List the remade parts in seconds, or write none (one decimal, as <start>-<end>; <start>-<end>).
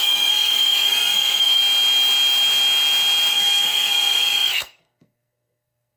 0.0-1.6; 3.3-6.0